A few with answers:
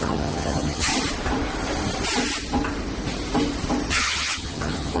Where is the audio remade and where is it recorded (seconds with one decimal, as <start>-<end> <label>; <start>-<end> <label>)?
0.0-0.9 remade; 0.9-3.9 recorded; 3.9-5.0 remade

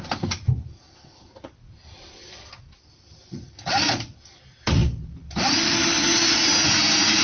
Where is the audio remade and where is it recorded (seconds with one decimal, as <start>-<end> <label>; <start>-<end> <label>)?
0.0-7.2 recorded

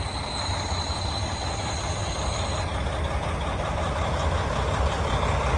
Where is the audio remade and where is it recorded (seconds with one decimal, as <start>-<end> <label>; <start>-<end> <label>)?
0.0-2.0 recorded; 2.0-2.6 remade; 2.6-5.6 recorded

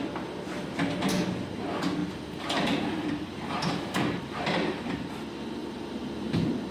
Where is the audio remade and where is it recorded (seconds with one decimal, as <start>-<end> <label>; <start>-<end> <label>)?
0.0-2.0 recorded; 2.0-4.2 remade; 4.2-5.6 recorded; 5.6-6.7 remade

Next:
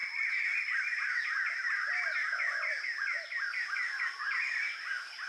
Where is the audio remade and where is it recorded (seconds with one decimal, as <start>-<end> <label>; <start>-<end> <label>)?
0.0-5.3 recorded

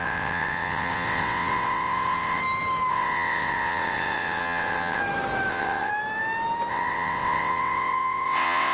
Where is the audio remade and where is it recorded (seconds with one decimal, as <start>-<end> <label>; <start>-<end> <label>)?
0.0-2.4 remade; 2.4-2.9 recorded; 2.9-5.0 remade; 5.0-5.5 recorded; 5.5-5.9 remade; 5.9-6.7 recorded; 6.7-8.7 remade